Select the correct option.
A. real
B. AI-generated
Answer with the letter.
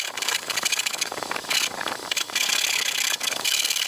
B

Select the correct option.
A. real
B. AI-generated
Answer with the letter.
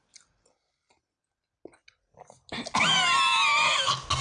A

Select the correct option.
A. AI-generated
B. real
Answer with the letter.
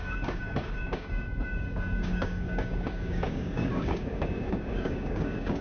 A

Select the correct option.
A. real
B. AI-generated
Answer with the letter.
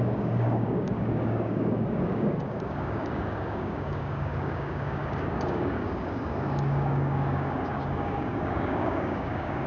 B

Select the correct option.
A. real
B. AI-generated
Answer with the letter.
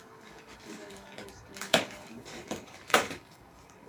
B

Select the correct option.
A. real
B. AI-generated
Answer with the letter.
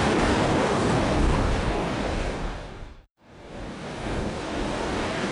B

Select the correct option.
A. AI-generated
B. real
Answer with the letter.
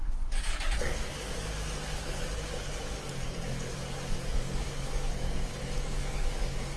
A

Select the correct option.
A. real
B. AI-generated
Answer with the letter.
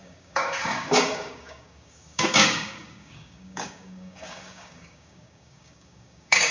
B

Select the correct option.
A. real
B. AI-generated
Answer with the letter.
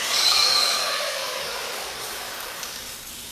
B